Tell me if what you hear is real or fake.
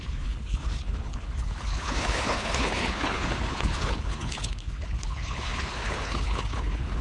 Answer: fake